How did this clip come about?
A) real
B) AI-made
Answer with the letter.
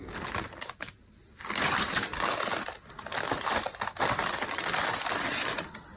A